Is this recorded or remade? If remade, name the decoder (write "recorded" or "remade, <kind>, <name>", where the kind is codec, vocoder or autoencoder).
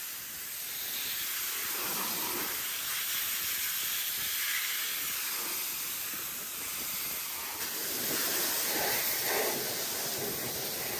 recorded